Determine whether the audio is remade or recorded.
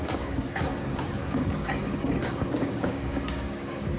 remade